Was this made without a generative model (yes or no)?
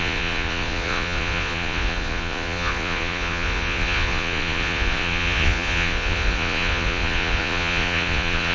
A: no